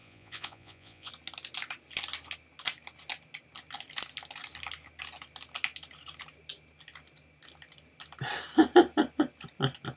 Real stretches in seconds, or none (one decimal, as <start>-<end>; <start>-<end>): 1.1-10.0